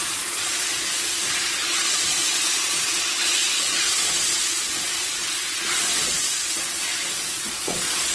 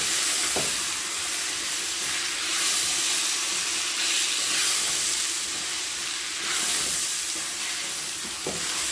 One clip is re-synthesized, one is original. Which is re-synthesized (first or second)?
first